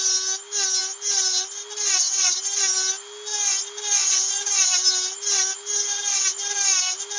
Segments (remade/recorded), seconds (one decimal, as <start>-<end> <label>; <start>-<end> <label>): 0.0-7.2 recorded